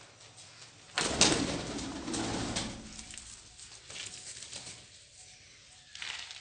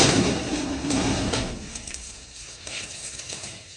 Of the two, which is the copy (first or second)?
second